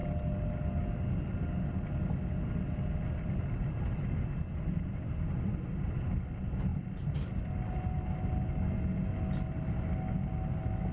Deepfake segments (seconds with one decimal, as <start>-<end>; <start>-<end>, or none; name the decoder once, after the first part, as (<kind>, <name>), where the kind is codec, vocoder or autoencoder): none